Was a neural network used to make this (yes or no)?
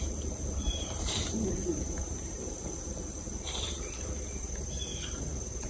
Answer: yes